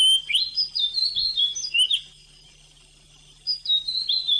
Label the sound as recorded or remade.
recorded